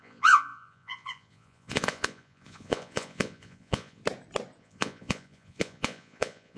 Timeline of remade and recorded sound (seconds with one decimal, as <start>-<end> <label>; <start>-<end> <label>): 0.0-4.0 remade; 4.0-4.6 recorded; 4.6-6.6 remade